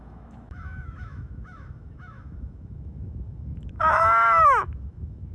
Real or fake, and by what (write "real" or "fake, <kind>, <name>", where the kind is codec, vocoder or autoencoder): fake, autoencoder, DAC-VAE